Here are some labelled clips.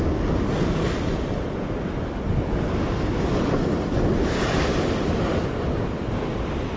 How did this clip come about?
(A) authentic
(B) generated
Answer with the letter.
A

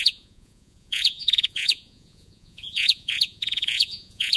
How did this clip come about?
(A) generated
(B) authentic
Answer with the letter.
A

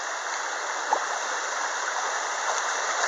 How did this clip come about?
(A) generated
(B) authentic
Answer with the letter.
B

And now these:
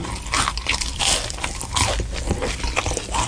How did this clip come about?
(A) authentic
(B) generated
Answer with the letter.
A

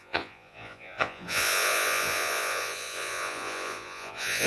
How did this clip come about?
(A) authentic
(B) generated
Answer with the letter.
B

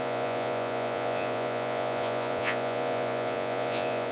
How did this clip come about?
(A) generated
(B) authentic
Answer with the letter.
A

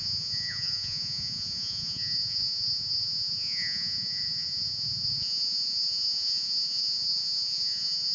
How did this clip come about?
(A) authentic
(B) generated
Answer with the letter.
B